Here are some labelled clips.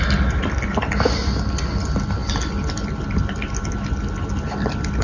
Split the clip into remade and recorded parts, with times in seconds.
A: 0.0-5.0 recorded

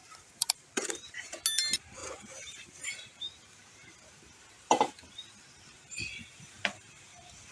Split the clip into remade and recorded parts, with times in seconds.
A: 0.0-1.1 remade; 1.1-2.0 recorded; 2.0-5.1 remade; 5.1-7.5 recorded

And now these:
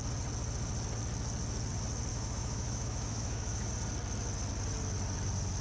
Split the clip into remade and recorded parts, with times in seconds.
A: 0.0-2.1 recorded; 2.1-3.7 remade; 3.7-5.6 recorded